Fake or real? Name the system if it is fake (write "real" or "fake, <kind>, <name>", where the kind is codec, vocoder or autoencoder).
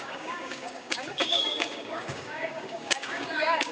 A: fake, codec, DAC